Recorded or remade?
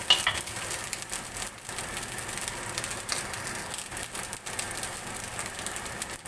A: recorded